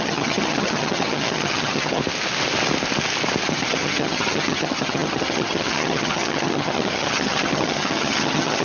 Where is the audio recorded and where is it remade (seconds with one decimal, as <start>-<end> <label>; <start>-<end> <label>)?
0.0-2.0 remade; 2.0-3.5 recorded; 3.5-8.6 remade